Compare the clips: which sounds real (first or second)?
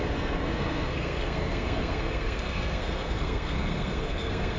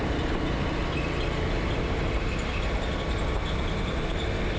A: second